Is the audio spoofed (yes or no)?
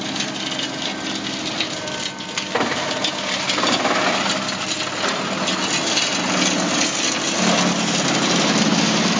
no